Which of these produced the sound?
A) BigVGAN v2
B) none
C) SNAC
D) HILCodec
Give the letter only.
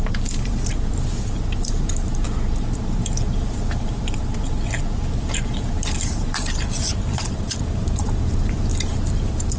A